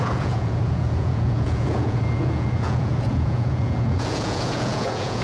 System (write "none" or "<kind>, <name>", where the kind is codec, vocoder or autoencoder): vocoder, Vocos